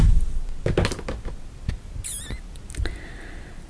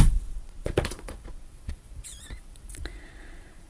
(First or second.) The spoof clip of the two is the second